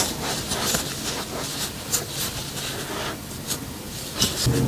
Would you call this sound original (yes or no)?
yes